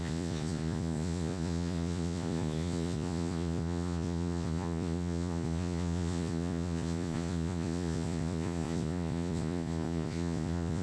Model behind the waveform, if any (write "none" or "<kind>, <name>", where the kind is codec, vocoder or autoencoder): vocoder, Vocos